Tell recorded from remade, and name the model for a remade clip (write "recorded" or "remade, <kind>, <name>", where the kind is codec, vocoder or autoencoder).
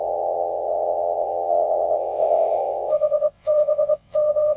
remade, vocoder, WaveNeXt